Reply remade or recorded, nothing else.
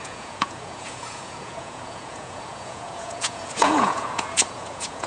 remade